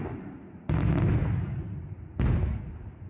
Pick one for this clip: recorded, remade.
recorded